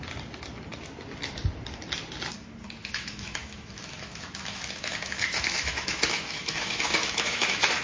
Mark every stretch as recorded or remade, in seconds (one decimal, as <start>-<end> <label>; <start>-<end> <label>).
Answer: 0.0-2.8 recorded; 2.8-7.8 remade